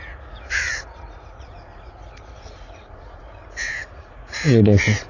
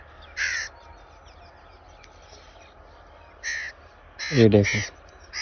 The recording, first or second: second